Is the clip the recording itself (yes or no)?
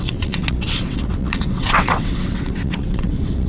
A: no